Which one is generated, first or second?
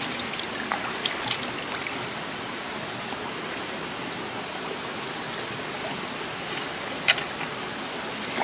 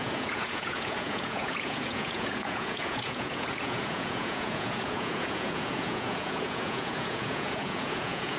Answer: second